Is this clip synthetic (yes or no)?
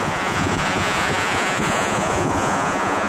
yes